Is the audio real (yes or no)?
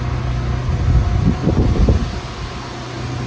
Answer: yes